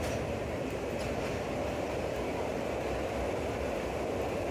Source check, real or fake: real